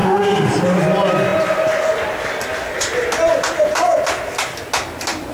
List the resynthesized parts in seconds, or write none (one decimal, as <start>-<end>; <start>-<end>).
0.0-0.5